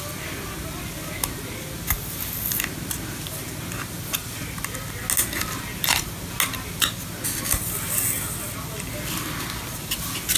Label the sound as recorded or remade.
recorded